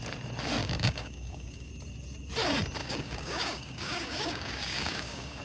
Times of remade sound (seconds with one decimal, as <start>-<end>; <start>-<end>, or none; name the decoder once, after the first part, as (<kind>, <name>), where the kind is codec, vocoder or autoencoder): 0.6-1.7 (codec, DAC); 2.8-5.4